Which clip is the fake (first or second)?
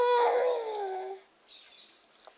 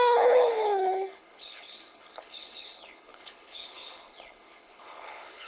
second